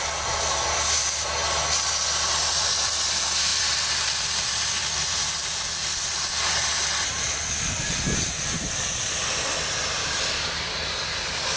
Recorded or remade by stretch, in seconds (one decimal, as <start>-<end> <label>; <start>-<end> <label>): 0.0-1.4 remade; 1.4-2.5 recorded; 2.5-11.6 remade